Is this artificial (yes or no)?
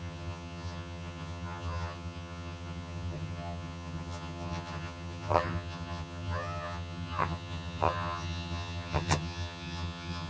yes